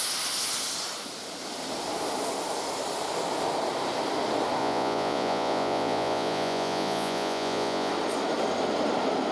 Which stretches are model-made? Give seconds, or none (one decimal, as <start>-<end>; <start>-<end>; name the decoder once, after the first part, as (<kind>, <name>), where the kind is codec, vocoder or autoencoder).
4.6-7.9 (vocoder, Vocos)